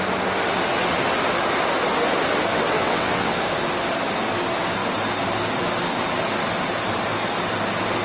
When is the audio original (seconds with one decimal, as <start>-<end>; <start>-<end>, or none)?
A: 0.0-2.5; 3.4-8.0